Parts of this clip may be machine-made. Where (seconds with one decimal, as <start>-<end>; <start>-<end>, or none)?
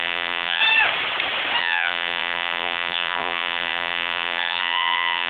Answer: 0.0-0.6; 1.6-5.3